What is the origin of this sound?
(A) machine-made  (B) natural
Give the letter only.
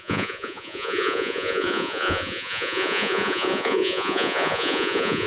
A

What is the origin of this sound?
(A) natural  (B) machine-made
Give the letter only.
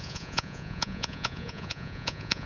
B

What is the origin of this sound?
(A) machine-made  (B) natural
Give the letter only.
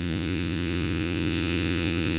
A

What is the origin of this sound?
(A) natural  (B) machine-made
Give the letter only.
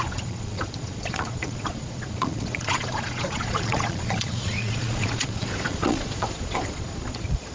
B